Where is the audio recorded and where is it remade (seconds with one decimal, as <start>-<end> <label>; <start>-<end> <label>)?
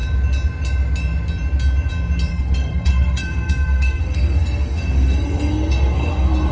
0.0-2.3 recorded; 2.3-6.5 remade